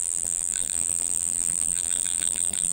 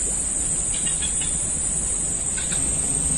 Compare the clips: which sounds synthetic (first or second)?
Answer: first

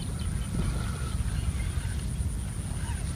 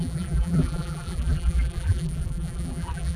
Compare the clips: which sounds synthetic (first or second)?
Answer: second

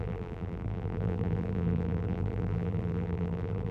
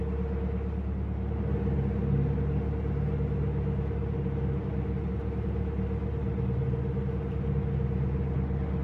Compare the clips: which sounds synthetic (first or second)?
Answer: first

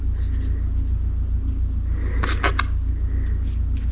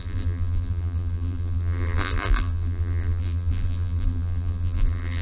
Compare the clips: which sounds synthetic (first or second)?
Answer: second